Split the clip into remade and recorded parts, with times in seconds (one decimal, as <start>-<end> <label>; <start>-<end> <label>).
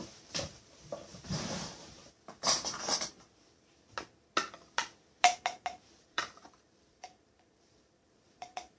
0.0-3.1 remade; 3.1-6.0 recorded; 6.0-8.8 remade